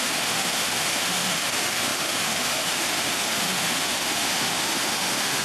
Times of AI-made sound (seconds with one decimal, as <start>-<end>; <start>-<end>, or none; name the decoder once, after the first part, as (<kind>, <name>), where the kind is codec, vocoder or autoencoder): 0.0-5.4 (autoencoder, DAC-VAE)

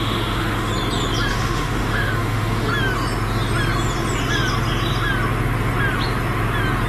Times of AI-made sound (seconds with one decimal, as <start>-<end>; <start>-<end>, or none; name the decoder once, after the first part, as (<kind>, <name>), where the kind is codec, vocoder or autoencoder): 0.0-0.7 (autoencoder, DAC-VAE); 1.3-2.7

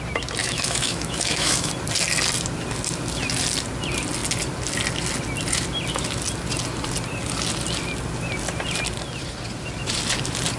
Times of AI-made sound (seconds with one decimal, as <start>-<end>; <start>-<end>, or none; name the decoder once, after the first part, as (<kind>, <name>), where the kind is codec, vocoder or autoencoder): 0.4-1.7 (autoencoder, DAC-VAE)

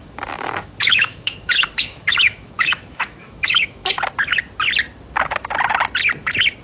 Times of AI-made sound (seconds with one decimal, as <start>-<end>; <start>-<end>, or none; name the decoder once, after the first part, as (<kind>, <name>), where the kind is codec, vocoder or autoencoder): 0.0-4.0 (autoencoder, DAC-VAE)

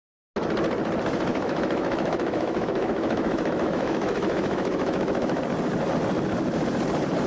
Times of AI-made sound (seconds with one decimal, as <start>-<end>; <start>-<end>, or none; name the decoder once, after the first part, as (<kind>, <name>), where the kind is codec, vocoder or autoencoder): 1.3-5.4 (autoencoder, DAC-VAE)

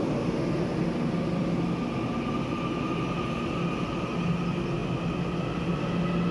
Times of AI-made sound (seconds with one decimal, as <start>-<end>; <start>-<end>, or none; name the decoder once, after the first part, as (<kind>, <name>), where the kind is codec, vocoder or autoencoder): none